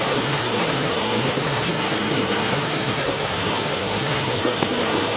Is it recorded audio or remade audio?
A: remade